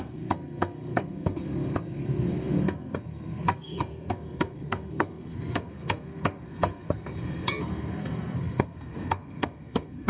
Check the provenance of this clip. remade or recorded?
remade